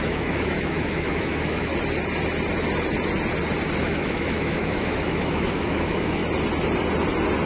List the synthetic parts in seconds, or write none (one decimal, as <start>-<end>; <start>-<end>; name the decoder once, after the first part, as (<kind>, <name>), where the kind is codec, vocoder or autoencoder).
0.0-1.7 (autoencoder, DAC-VAE); 3.8-6.2